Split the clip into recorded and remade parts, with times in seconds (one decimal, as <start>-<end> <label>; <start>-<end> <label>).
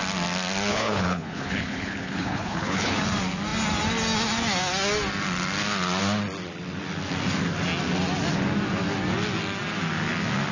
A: 0.0-0.7 recorded; 0.7-3.0 remade; 3.0-10.5 recorded